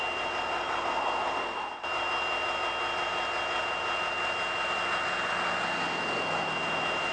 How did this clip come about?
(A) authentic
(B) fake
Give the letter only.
A